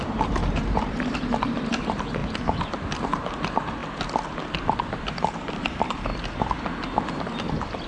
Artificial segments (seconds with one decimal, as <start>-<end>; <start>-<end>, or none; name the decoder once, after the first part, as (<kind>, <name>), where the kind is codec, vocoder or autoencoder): 0.0-2.2 (vocoder, BigVGAN v2); 3.1-3.8; 4.4-6.1; 7.5-7.9